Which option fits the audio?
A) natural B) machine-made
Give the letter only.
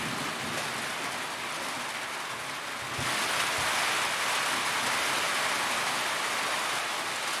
A